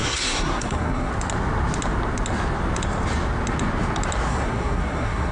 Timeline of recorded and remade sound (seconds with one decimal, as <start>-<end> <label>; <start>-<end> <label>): 0.0-1.1 remade; 1.1-4.3 recorded; 4.3-5.3 remade